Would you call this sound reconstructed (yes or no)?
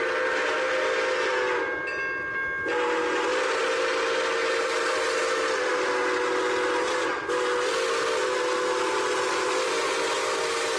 no